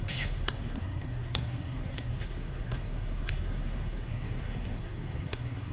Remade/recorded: remade